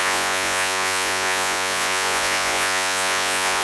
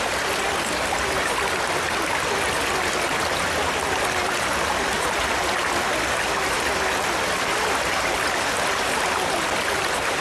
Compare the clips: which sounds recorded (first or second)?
second